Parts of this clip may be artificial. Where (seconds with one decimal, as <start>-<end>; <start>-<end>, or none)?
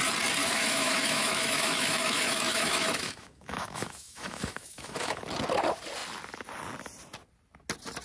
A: 0.4-5.2